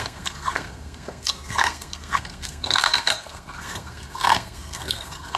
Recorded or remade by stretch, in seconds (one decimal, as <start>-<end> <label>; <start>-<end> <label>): 0.0-5.4 remade

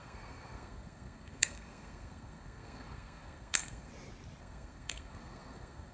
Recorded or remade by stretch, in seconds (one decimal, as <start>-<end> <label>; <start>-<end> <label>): 0.0-3.9 remade; 3.9-4.4 recorded; 4.4-5.9 remade

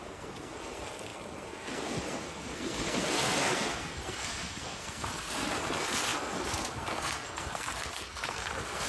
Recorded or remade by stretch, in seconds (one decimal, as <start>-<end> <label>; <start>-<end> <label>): 0.0-8.9 remade

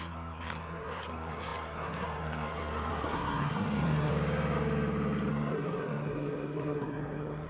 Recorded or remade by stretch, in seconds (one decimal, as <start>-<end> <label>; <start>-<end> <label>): 0.0-4.1 remade; 4.1-5.3 recorded; 5.3-7.5 remade

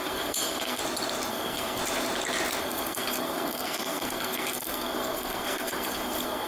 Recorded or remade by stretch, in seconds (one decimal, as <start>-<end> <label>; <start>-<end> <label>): 0.0-0.8 remade; 0.8-1.3 recorded; 1.3-1.8 remade; 1.8-2.6 recorded; 2.6-6.5 remade